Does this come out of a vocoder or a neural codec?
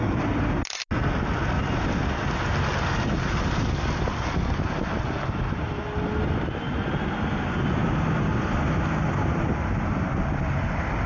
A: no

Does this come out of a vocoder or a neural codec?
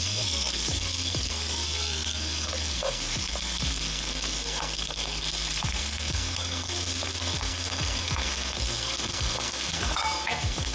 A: yes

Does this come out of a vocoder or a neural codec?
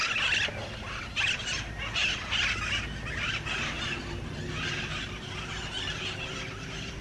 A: no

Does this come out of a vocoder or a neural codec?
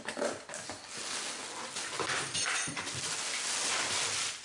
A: no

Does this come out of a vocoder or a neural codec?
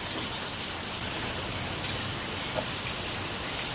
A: no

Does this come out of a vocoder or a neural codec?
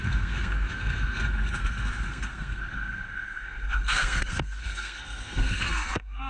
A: yes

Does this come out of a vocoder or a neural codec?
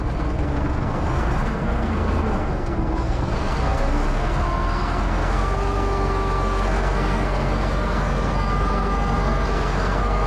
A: yes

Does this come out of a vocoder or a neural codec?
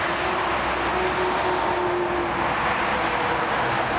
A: no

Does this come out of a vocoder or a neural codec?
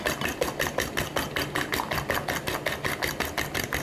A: no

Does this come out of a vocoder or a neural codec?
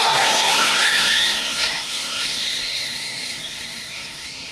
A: yes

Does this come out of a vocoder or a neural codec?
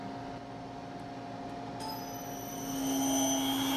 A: no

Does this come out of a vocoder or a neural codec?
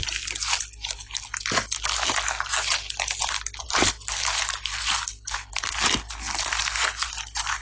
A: no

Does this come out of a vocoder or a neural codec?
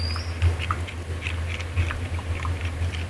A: no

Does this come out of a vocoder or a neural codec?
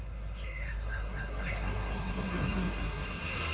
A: yes